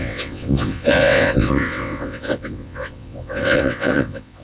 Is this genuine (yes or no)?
no